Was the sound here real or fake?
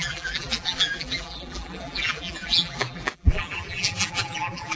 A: fake